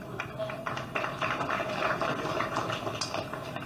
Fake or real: real